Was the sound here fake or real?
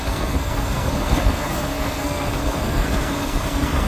fake